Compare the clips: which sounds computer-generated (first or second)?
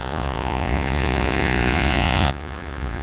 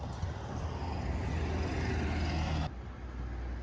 first